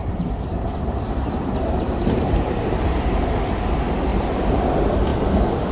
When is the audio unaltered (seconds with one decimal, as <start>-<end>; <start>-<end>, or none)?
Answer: 3.4-4.1; 4.6-5.7